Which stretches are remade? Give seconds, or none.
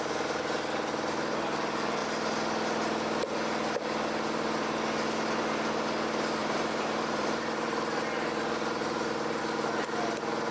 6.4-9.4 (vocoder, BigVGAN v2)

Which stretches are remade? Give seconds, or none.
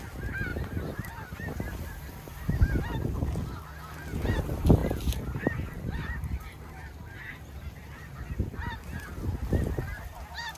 0.5-2.5 (vocoder, BigVGAN v2); 4.8-8.8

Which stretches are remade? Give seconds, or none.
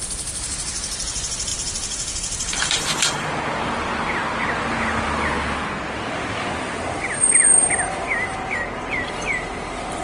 0.0-4.2 (vocoder, BigVGAN v2); 8.0-10.0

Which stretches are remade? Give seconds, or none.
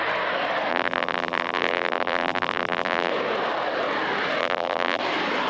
0.7-3.1 (vocoder, BigVGAN v2); 4.4-5.0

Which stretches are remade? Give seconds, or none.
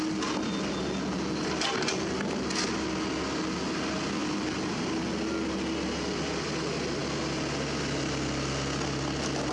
none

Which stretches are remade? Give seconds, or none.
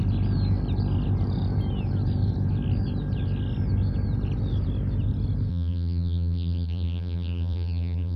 5.5-8.2 (vocoder, BigVGAN v2)